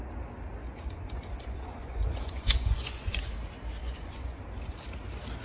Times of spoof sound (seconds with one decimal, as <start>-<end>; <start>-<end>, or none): 0.6-3.3; 3.8-4.4